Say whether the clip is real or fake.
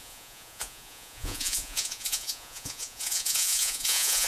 fake